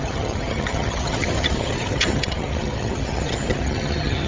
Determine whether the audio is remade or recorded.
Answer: remade